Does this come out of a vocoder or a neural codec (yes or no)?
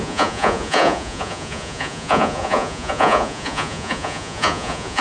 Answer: yes